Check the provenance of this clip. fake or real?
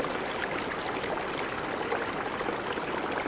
real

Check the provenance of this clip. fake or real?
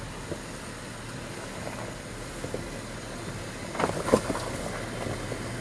real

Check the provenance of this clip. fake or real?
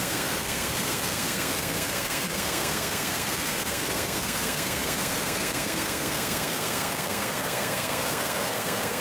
fake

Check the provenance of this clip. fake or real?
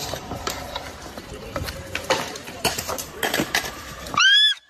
fake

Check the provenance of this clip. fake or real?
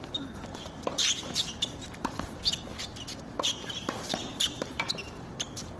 fake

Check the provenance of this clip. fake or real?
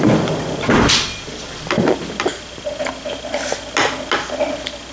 real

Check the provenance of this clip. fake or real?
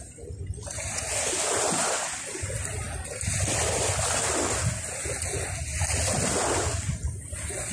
real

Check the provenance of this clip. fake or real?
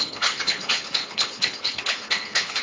fake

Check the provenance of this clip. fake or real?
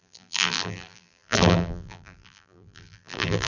fake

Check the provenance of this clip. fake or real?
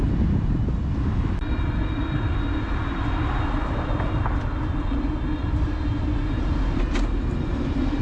real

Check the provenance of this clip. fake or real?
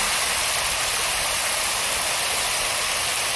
real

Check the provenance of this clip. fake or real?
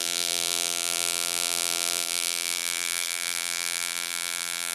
fake